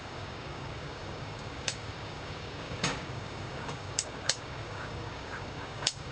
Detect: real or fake fake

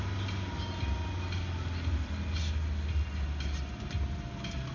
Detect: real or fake real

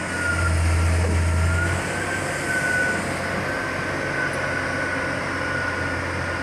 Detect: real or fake real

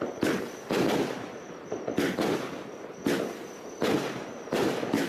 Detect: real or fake real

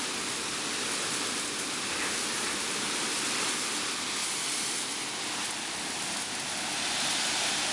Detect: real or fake real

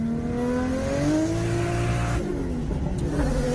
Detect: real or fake real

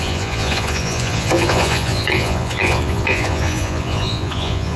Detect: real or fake fake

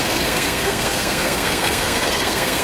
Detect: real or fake fake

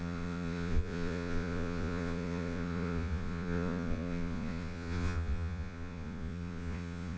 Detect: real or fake fake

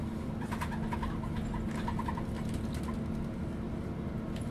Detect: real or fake real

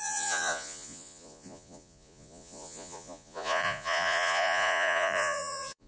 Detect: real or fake fake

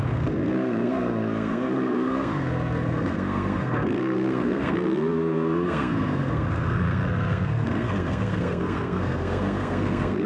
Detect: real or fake fake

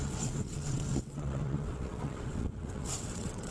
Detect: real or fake fake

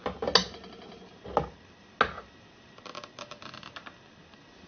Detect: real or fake real